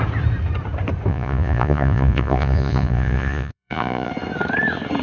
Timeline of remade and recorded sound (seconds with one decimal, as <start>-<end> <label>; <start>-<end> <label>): 0.0-1.1 recorded; 1.1-4.1 remade; 4.1-5.0 recorded